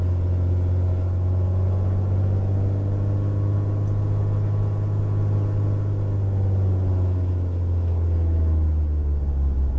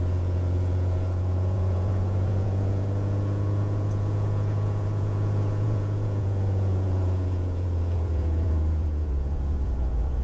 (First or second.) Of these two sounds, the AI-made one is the second